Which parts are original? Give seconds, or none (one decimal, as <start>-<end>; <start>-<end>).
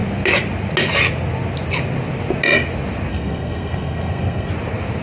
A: 0.0-3.1; 4.5-5.0